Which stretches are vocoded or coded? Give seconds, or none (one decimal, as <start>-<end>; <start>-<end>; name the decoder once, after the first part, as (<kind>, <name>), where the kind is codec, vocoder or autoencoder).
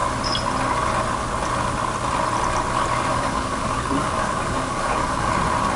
3.1-5.3 (codec, DAC)